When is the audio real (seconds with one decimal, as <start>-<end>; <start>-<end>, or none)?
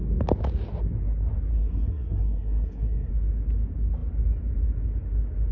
0.0-1.5; 3.1-5.5